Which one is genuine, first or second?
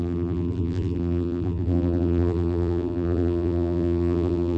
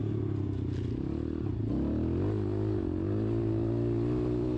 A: second